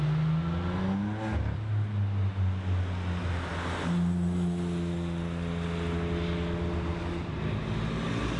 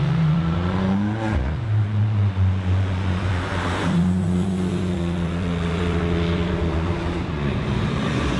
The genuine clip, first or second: first